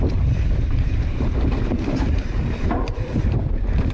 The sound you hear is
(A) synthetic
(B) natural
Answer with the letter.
A